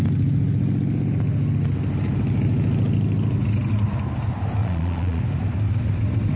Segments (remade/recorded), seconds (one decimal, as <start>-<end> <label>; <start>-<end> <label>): 0.0-4.6 recorded; 4.6-5.2 remade; 5.2-6.4 recorded